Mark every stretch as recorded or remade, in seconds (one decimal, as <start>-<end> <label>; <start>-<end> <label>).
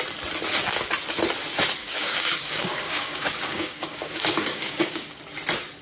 0.0-1.8 recorded; 1.8-5.2 remade; 5.2-5.8 recorded